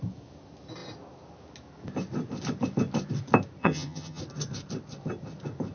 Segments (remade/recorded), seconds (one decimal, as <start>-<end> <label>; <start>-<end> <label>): 0.0-3.6 recorded; 3.6-4.2 remade; 4.2-5.7 recorded